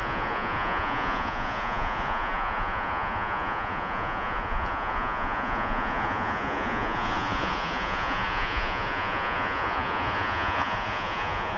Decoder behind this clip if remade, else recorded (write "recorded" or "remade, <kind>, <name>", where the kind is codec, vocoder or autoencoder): remade, vocoder, Vocos